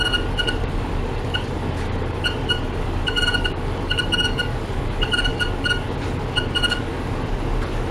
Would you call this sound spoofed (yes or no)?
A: yes